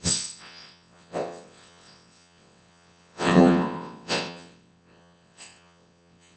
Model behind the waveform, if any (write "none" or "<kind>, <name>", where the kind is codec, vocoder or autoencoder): vocoder, WaveNeXt